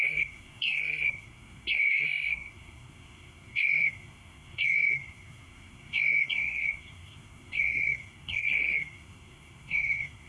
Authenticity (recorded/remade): remade